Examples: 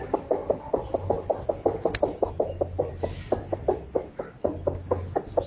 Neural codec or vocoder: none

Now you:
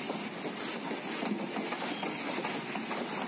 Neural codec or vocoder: none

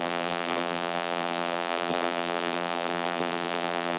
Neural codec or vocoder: vocoder, BigVGAN v2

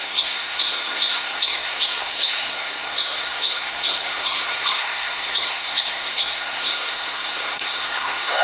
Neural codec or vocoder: codec, SNAC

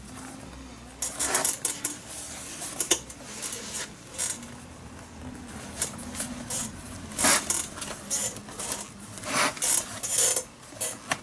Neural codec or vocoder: none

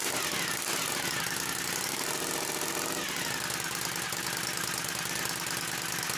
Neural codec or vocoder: none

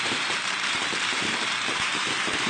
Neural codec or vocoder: vocoder, BigVGAN v2